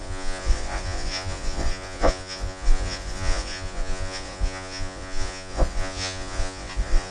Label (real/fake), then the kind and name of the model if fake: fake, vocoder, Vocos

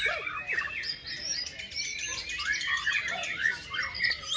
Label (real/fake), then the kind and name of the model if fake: real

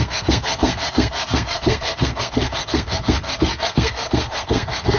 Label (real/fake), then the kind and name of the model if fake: fake, codec, SNAC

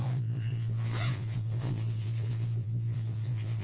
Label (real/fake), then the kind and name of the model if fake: fake, vocoder, Vocos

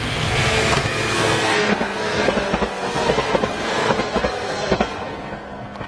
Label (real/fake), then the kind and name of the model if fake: fake, codec, SNAC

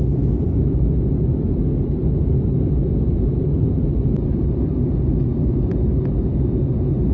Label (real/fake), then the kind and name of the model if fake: real